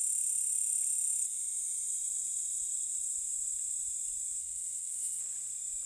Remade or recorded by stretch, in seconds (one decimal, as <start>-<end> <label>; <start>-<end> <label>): 0.0-4.4 recorded; 4.4-5.2 remade; 5.2-5.9 recorded